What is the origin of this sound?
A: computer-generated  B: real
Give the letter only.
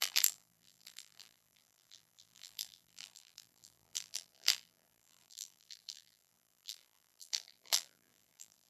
A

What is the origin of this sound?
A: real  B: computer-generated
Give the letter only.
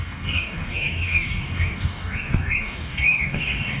B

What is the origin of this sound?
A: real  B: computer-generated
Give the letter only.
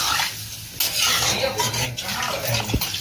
A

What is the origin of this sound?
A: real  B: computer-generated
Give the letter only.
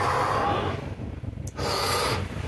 A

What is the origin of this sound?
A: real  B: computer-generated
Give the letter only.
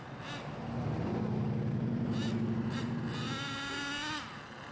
A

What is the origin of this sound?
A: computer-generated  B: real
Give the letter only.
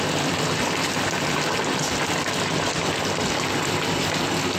B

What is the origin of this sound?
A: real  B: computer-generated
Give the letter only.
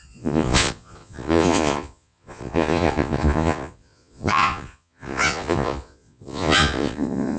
B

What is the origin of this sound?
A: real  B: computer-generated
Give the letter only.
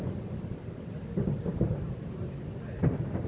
A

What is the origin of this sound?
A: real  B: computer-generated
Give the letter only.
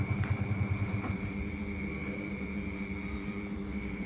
B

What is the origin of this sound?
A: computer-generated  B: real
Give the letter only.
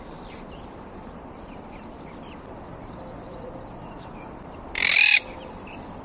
A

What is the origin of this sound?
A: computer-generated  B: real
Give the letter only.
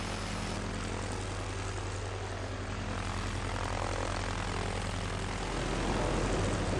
B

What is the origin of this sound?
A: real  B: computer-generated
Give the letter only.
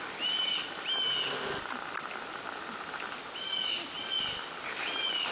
A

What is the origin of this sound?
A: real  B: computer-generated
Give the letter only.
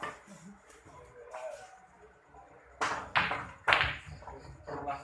A